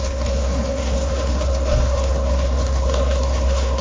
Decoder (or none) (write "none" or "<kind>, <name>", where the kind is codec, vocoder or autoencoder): codec, SNAC